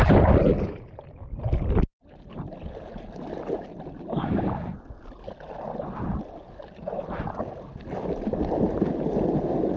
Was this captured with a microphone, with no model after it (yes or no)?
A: yes